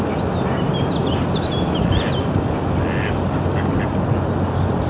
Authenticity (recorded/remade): recorded